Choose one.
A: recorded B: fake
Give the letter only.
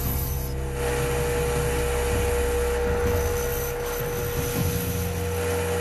A